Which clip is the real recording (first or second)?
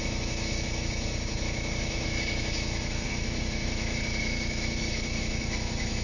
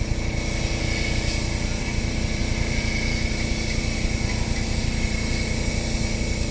second